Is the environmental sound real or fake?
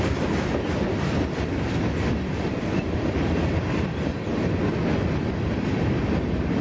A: real